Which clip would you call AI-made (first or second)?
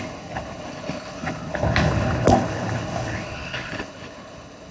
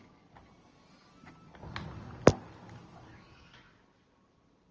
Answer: first